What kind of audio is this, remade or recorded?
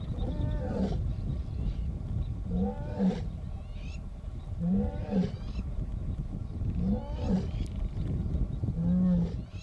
recorded